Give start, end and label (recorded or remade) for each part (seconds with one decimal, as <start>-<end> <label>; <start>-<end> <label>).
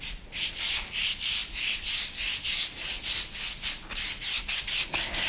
0.0-5.3 recorded